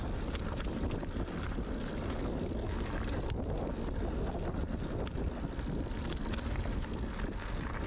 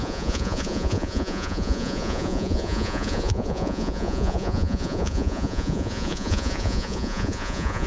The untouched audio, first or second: first